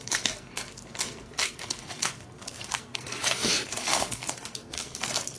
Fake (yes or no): yes